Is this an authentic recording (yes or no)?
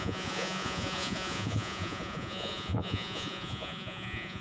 no